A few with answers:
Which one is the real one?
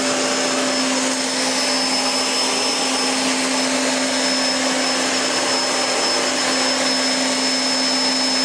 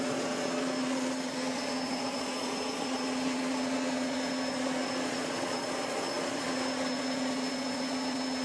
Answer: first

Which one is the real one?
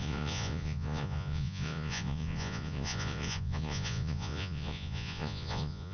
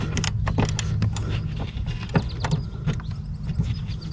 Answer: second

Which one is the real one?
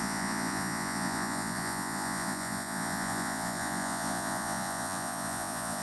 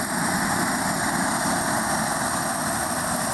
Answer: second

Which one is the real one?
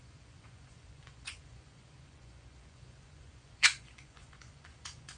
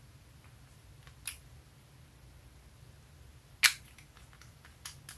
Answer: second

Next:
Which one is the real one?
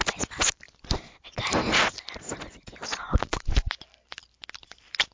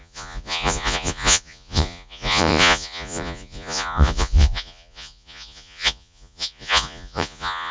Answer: first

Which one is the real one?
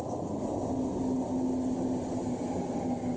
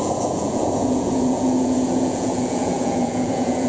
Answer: first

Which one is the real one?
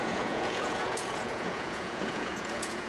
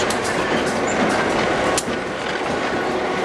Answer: second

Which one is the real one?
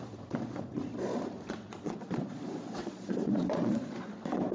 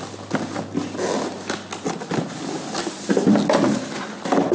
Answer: second